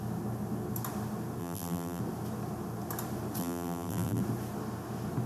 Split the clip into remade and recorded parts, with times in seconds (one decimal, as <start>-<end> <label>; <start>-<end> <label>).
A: 0.0-1.4 recorded; 1.4-2.0 remade; 2.0-3.4 recorded; 3.4-4.2 remade; 4.2-5.3 recorded